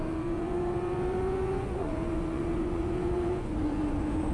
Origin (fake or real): fake